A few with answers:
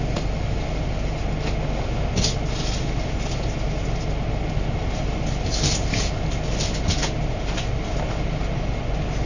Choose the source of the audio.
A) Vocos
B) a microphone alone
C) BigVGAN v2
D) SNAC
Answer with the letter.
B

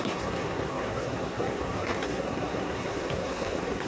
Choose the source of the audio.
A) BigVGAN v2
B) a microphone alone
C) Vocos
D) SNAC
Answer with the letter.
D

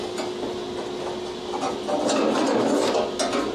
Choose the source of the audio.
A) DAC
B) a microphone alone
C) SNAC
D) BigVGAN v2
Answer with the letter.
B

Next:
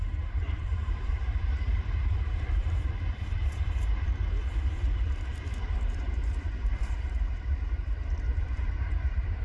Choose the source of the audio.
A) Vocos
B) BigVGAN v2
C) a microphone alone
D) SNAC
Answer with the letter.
B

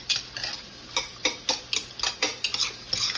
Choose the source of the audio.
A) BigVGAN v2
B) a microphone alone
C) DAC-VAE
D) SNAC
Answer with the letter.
B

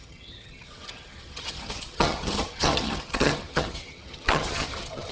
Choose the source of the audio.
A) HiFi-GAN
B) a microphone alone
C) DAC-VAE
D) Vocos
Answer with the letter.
A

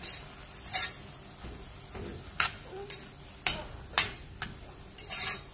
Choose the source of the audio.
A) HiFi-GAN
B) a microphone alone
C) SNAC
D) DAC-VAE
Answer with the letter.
B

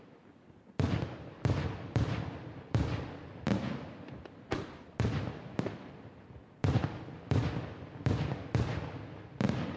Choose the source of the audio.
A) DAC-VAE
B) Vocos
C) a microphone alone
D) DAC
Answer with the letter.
C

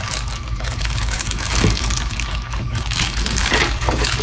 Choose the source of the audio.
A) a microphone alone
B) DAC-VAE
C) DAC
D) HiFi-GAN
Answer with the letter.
C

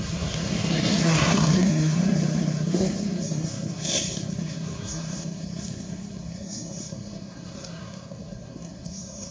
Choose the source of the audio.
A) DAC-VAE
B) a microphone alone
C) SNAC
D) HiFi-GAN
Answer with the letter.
C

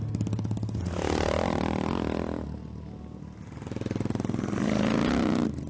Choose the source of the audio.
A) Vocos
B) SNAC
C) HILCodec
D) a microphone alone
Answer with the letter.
D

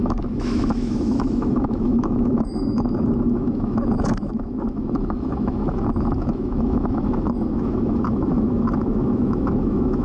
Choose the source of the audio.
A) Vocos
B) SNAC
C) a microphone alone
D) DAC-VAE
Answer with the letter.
D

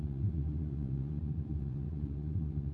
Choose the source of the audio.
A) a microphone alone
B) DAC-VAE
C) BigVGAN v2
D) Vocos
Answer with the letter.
D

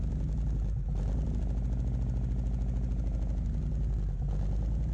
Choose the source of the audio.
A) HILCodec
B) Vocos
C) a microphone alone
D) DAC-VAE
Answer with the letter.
C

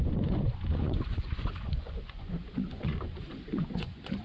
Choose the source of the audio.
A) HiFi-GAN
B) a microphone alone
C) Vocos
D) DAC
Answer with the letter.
C